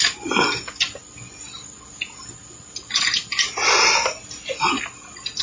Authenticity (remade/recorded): recorded